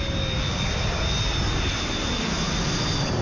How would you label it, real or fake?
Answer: real